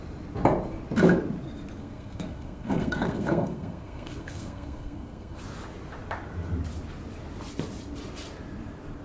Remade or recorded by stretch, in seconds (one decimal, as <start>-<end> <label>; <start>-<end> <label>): 0.0-1.8 recorded; 1.8-5.4 remade; 5.4-9.0 recorded